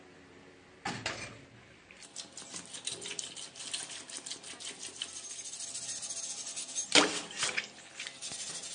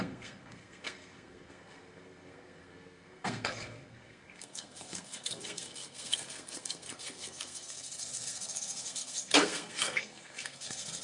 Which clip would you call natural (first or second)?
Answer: first